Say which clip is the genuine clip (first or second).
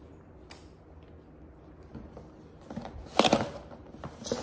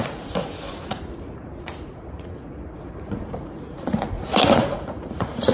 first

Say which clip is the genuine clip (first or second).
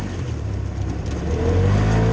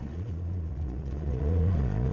first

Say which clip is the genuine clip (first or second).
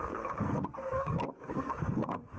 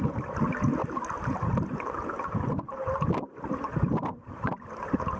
second